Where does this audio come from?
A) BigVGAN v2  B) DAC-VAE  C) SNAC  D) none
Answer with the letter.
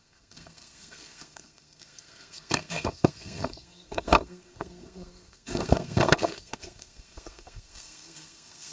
C